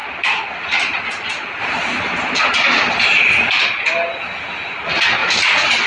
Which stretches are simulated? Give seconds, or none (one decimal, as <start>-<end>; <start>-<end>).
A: 0.0-3.5; 5.2-5.9